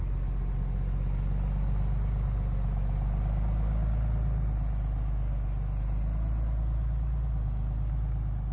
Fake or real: real